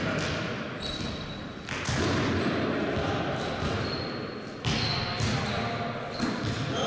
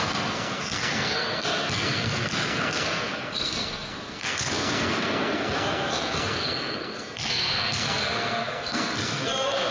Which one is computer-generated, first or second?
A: second